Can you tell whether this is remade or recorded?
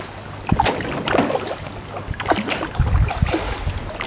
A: recorded